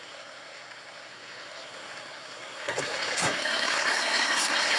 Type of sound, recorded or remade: remade